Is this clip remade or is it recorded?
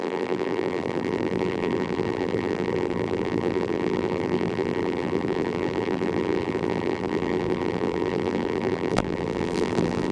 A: remade